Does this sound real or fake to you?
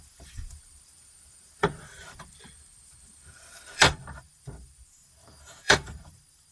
fake